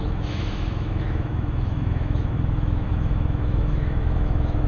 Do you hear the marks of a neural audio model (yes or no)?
yes